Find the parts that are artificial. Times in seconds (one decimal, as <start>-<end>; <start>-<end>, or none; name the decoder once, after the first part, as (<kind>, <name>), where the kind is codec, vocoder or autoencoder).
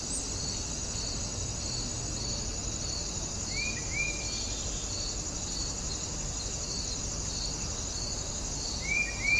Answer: none